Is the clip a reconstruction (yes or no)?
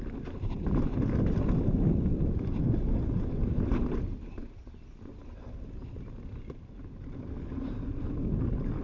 no